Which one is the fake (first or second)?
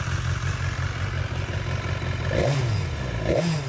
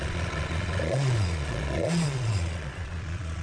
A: second